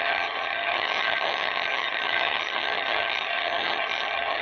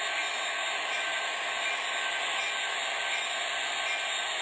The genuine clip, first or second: second